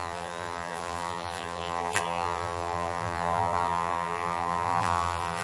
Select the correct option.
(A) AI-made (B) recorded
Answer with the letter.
A